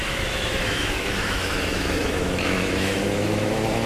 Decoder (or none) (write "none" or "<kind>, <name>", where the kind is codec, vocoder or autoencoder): autoencoder, DAC-VAE